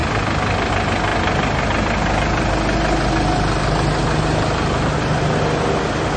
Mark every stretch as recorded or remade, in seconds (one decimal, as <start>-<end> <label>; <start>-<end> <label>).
0.0-6.2 recorded